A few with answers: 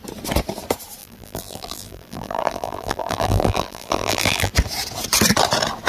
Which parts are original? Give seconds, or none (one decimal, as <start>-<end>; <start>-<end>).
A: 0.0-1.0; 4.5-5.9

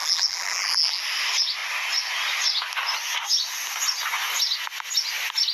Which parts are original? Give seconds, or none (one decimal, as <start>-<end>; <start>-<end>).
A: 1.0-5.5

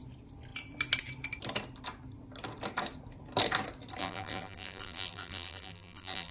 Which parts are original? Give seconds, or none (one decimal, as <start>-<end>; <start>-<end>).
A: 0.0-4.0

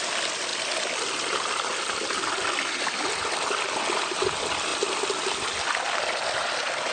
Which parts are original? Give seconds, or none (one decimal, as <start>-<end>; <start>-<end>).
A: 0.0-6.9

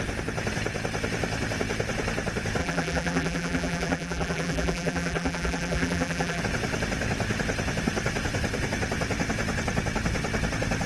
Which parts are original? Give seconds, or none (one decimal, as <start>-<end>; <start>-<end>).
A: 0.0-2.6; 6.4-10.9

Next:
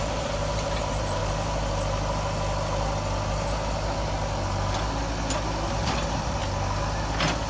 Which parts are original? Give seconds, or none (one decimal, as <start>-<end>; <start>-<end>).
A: 1.2-5.7; 6.4-7.5

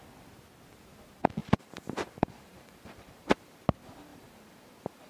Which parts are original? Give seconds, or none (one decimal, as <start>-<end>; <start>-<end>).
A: 0.0-1.4; 3.6-4.1

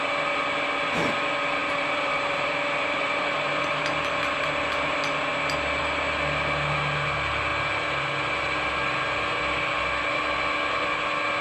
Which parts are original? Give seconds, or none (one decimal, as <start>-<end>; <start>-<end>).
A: 0.0-1.6; 3.9-11.4